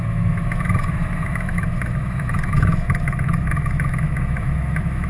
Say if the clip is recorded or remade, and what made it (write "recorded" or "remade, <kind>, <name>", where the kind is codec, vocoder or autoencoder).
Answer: remade, autoencoder, DAC-VAE